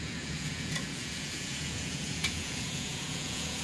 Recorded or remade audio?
remade